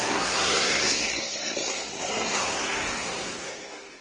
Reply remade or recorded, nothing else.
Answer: remade